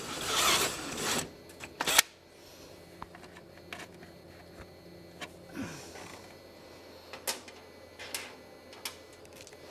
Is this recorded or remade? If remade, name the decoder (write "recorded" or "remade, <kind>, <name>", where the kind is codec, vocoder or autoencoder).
recorded